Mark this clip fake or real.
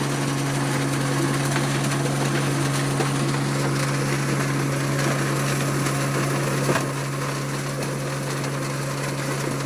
real